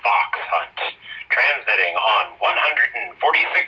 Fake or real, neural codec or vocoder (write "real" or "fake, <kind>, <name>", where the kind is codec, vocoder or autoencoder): real